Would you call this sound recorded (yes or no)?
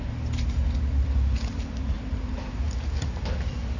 yes